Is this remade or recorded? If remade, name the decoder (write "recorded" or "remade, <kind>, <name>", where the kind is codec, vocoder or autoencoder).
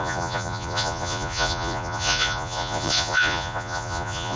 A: remade, vocoder, Vocos